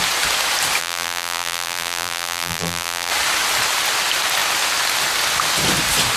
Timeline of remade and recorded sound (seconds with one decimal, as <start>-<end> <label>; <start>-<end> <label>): 0.0-0.8 recorded; 0.8-3.1 remade; 3.1-6.2 recorded